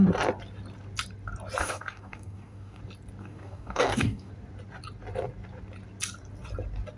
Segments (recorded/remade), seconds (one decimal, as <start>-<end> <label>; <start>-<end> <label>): 0.0-1.6 recorded; 1.6-2.8 remade; 2.8-3.2 recorded; 3.2-4.3 remade; 4.3-7.0 recorded